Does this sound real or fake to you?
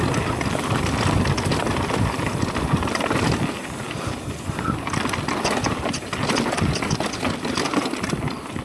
real